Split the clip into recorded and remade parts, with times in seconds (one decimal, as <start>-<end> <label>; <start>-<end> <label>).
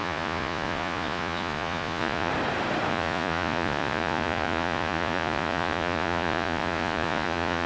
0.0-2.3 remade; 2.3-2.9 recorded; 2.9-7.7 remade